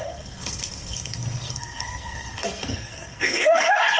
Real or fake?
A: fake